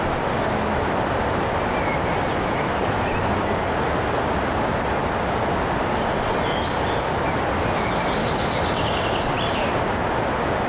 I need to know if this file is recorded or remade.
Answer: recorded